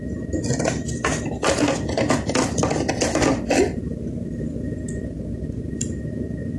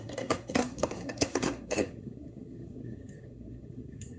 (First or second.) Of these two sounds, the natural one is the first